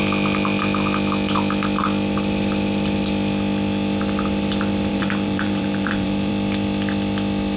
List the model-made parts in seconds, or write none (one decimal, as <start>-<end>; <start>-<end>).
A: 4.9-6.3